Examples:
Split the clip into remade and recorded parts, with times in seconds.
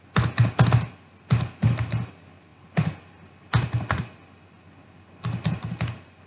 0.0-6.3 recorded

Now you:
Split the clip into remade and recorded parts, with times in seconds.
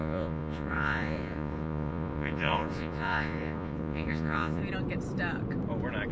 0.0-4.6 remade; 4.6-6.1 recorded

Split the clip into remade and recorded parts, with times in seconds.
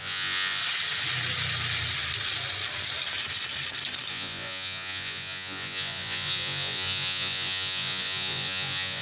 0.0-0.6 remade; 0.6-4.1 recorded; 4.1-9.0 remade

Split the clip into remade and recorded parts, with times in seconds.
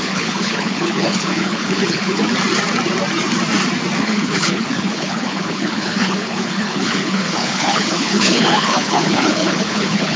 0.0-2.2 remade; 2.2-4.0 recorded; 4.0-10.2 remade